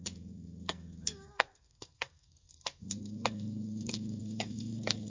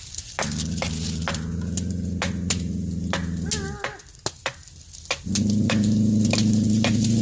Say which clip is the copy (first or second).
first